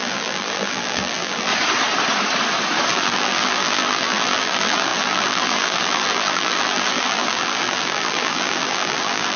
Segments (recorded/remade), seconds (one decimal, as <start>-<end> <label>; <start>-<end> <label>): 0.0-1.5 remade; 1.5-2.9 recorded; 2.9-9.4 remade